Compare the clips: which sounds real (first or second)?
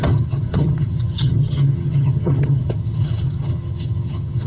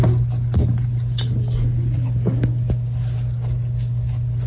second